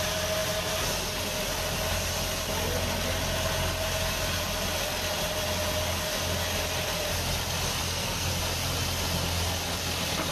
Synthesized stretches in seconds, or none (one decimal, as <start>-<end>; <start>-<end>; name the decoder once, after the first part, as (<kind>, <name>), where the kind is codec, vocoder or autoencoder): 7.8-8.3 (codec, SNAC)